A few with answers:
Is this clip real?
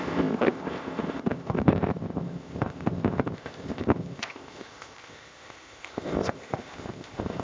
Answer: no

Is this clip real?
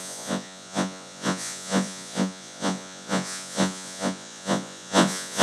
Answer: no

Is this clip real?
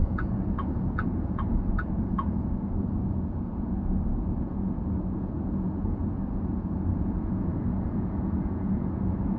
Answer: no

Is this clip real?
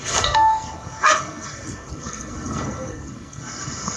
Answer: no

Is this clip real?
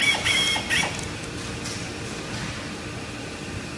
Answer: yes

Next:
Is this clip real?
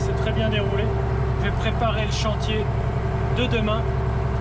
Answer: yes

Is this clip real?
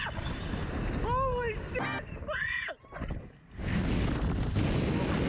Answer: yes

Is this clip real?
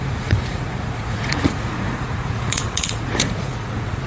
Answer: no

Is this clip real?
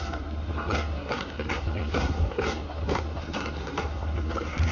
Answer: no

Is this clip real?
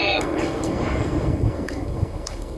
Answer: no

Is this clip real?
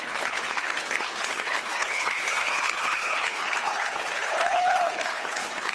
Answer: no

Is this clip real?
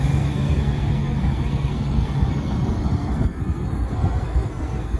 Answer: no